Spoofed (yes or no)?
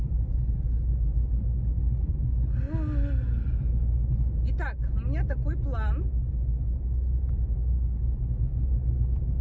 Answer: no